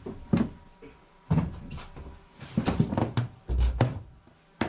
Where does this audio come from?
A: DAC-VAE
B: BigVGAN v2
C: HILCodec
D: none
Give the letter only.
B